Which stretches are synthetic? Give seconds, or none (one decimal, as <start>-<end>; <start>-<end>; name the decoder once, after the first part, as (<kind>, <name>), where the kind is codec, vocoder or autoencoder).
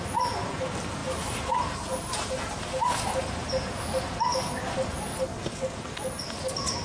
none